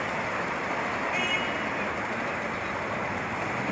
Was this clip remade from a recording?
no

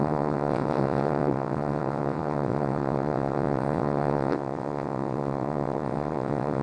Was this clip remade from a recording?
yes